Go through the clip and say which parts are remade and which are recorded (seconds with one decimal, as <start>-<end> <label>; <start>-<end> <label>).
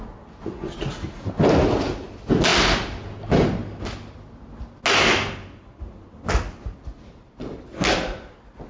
0.0-8.7 recorded